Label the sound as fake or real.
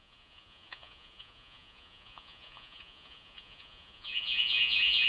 fake